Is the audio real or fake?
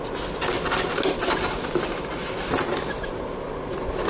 real